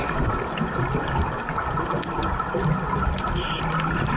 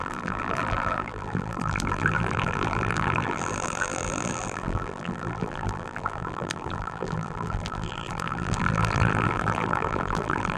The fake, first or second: second